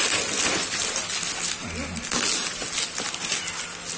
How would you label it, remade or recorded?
recorded